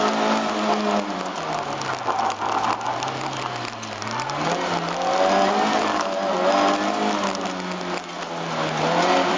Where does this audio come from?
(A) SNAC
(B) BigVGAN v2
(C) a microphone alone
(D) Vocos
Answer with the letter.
C